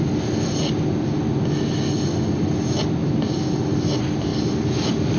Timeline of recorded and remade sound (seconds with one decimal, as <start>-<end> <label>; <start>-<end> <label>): 0.0-5.2 recorded